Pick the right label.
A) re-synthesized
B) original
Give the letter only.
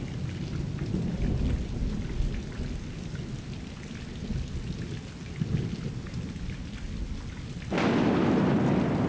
B